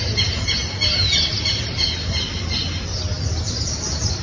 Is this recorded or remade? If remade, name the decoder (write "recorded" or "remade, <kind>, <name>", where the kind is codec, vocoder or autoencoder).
recorded